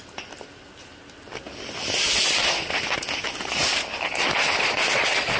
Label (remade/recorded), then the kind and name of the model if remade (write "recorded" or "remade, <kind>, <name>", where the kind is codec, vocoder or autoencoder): recorded